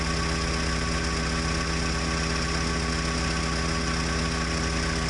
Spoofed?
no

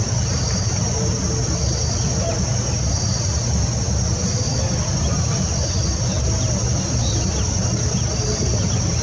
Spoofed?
no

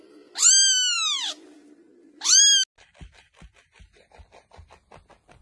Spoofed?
no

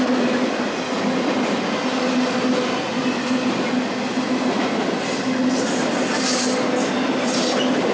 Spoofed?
no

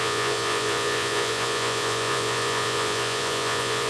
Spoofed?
yes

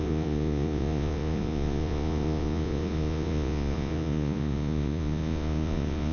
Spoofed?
yes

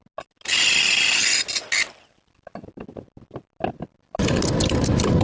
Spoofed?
no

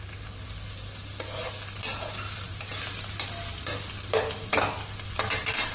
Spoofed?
no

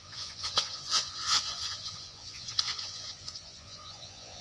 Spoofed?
yes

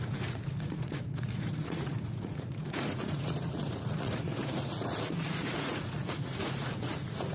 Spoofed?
yes